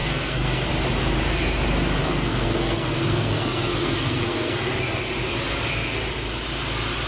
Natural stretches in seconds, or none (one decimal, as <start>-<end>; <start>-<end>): 0.7-2.0; 4.7-7.1